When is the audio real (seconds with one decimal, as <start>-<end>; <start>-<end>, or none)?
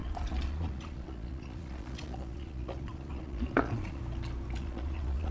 4.0-4.6